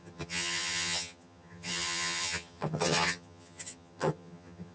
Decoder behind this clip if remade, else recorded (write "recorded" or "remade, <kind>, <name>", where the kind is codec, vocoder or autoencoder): remade, vocoder, HiFi-GAN